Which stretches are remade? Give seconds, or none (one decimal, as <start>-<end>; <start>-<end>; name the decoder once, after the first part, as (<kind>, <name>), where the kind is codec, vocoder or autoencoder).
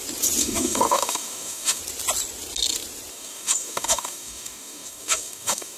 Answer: 0.4-1.8 (codec, DAC); 3.1-5.8